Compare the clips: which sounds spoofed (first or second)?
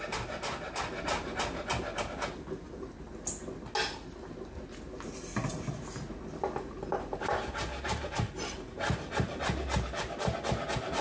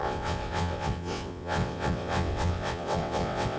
second